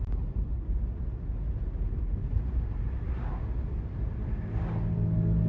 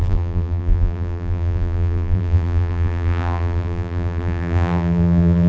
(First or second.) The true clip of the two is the first